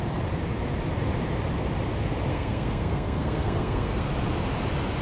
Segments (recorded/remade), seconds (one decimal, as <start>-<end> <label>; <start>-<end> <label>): 0.0-2.3 recorded; 2.3-4.1 remade; 4.1-5.0 recorded